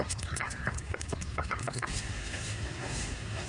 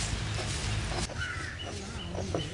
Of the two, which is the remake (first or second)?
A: first